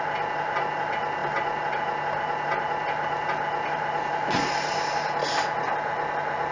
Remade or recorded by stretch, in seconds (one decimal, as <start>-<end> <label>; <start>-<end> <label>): 0.0-6.5 recorded